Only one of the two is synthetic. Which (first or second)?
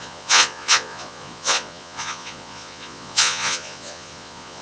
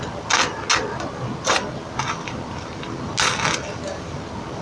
first